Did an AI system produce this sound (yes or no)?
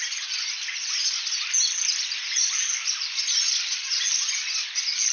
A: no